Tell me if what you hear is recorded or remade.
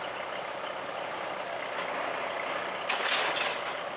recorded